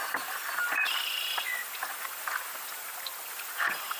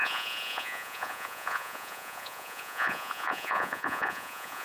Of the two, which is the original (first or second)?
first